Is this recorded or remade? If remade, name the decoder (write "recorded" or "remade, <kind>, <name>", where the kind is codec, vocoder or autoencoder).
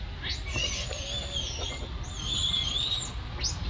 recorded